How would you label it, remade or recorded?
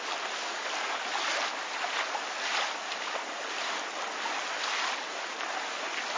recorded